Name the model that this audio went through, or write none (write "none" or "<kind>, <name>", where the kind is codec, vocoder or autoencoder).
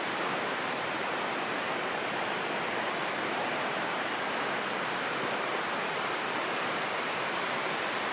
vocoder, BigVGAN v2